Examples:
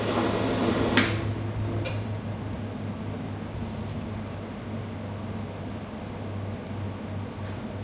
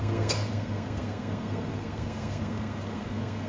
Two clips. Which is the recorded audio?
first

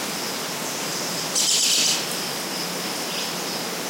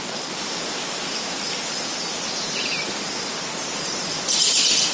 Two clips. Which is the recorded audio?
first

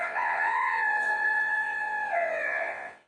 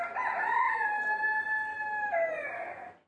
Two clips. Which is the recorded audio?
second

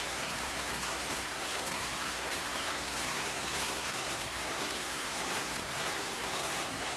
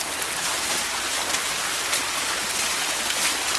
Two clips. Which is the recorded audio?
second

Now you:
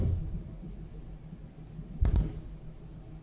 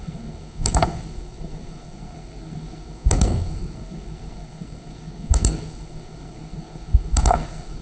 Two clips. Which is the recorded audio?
first